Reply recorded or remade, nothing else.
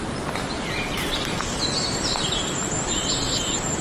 remade